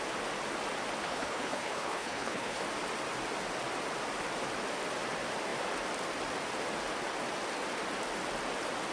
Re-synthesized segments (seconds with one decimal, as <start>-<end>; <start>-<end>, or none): 1.0-2.6